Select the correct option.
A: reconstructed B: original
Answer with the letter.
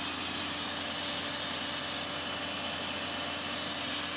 B